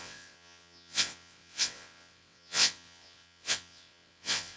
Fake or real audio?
fake